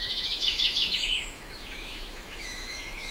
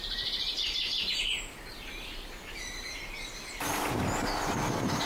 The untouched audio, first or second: second